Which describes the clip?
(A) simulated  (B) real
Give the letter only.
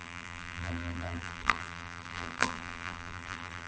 A